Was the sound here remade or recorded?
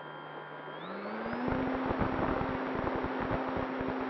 recorded